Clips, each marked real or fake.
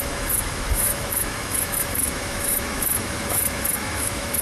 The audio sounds fake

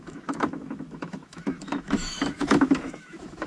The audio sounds fake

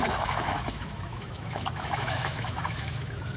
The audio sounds fake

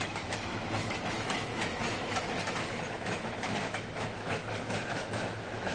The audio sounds fake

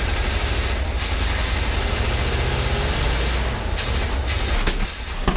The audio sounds real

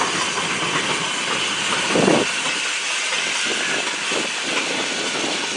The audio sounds real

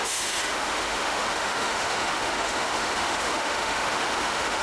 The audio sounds fake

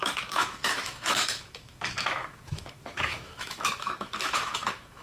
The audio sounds fake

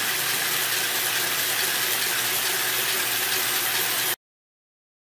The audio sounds real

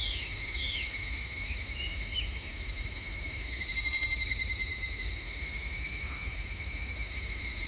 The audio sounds fake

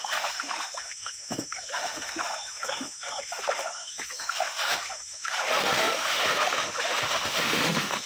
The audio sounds fake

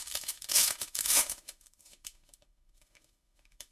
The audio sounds fake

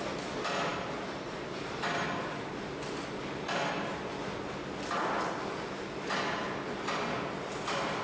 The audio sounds real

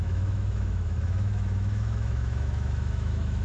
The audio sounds fake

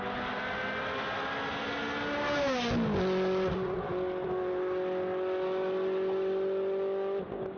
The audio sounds real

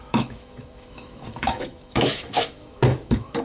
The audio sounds fake